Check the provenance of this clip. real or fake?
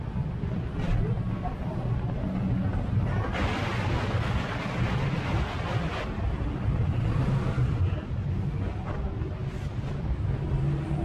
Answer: real